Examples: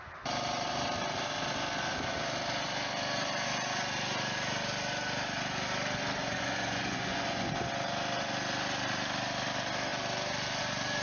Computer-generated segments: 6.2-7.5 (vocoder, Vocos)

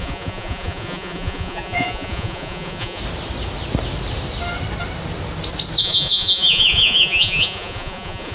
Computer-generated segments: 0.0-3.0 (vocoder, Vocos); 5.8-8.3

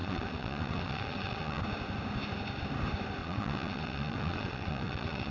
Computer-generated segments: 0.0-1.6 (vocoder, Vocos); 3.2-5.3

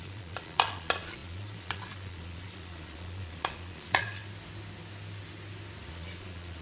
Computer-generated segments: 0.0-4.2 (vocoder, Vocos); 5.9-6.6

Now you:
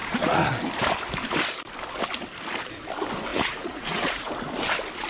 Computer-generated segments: 0.0-0.6 (vocoder, Vocos); 3.3-4.3